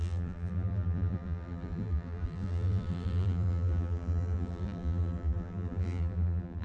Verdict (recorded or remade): remade